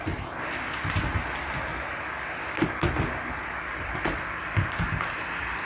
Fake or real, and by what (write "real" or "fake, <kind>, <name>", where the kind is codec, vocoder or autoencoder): real